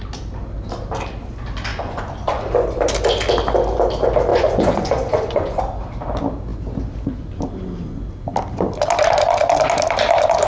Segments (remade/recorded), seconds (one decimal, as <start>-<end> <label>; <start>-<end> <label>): 0.0-1.7 recorded; 1.7-2.4 remade; 2.4-4.3 recorded; 4.3-5.6 remade; 5.6-10.5 recorded